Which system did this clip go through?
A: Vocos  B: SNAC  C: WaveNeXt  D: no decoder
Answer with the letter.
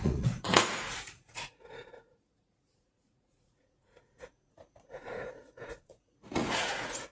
A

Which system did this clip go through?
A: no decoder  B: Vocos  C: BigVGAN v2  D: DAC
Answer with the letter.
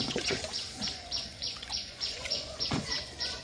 B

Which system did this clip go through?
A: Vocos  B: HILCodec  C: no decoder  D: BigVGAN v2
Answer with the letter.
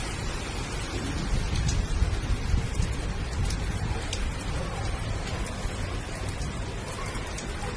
C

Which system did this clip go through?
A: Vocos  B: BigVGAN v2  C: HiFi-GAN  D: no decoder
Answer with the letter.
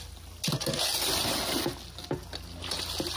D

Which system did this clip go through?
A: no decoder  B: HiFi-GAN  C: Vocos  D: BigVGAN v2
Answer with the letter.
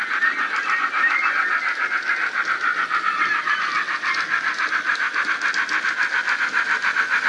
A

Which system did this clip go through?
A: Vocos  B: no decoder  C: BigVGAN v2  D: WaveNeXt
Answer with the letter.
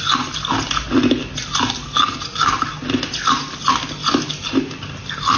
B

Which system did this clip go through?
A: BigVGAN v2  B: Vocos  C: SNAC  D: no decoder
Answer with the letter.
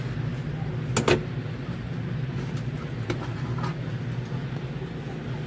D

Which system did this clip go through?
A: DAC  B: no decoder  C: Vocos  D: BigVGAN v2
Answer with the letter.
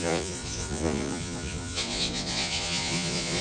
C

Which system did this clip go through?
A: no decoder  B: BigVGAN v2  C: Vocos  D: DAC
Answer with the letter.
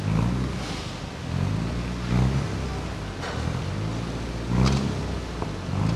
A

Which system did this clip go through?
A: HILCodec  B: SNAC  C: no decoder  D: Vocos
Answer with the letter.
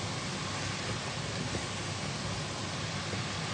C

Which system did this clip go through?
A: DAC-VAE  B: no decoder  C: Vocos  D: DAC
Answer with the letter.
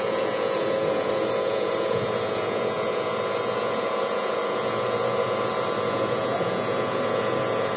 C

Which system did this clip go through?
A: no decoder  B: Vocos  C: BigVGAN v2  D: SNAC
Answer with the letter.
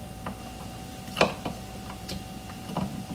A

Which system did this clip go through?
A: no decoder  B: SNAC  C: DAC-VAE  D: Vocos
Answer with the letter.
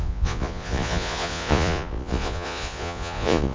D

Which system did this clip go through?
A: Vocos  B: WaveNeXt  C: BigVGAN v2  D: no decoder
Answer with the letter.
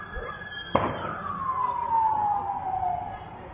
D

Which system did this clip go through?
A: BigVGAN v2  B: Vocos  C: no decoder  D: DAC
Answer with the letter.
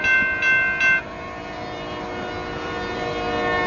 C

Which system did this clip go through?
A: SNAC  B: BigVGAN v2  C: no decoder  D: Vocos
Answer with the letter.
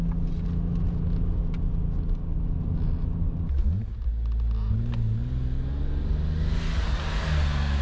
C